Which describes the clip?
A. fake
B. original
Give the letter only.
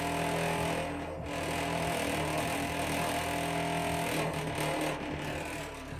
B